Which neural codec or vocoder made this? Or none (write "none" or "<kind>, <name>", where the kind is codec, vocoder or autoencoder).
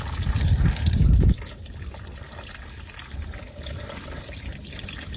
none